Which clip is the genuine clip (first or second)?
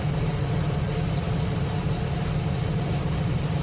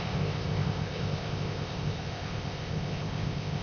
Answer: first